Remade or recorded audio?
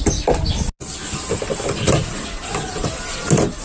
recorded